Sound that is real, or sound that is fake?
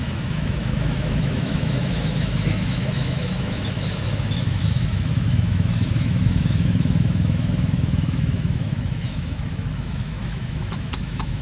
fake